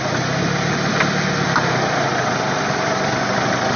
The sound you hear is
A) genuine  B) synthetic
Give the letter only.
A